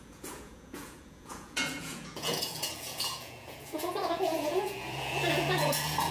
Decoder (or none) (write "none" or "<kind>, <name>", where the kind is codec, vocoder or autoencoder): vocoder, Vocos